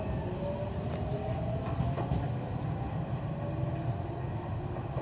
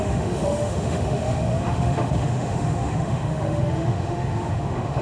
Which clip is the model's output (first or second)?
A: second